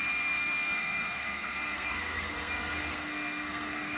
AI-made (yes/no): yes